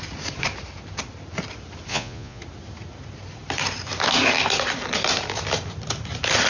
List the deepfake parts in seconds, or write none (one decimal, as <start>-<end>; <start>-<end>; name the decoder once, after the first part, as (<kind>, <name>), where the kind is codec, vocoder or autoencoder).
1.9-2.4 (vocoder, Vocos)